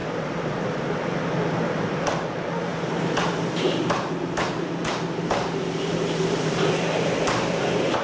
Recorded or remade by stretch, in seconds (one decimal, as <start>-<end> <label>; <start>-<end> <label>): 0.0-4.8 remade; 4.8-5.3 recorded; 5.3-8.0 remade